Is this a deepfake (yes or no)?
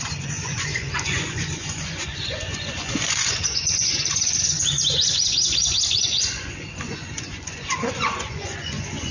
yes